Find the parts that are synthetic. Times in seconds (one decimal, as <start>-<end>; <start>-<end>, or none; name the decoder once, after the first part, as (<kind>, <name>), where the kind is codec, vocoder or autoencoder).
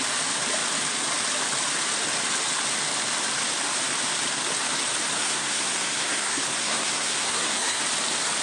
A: 5.2-7.8 (codec, SNAC)